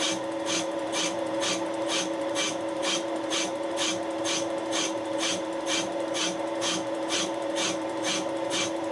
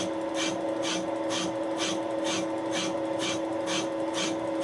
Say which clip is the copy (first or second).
first